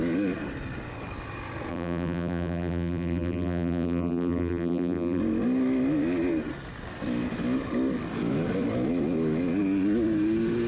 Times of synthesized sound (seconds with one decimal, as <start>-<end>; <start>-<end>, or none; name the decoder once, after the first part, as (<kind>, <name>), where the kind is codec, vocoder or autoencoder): 1.7-5.2 (vocoder, BigVGAN v2)